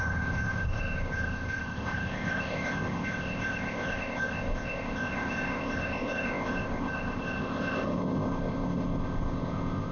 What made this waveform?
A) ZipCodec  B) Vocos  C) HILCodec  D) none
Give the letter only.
A